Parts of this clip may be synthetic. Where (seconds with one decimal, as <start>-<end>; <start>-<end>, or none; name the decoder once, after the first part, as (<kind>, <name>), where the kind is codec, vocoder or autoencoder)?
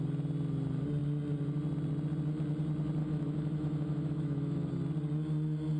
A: 3.0-4.7 (autoencoder, DAC-VAE)